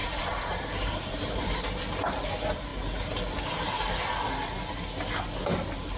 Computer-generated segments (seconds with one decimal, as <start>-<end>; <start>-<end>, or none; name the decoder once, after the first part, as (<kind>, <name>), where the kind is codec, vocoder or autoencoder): 0.0-1.6 (vocoder, BigVGAN v2)